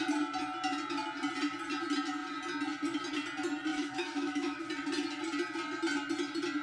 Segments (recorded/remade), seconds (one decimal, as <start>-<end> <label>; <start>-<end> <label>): 0.0-3.7 recorded; 3.7-4.6 remade; 4.6-6.6 recorded